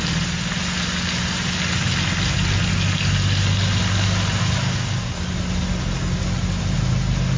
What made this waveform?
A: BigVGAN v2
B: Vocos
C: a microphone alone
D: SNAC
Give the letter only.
C